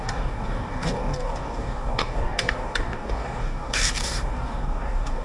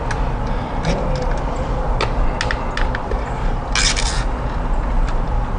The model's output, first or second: first